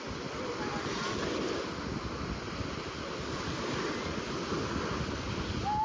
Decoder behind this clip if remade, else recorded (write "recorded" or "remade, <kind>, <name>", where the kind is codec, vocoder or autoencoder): recorded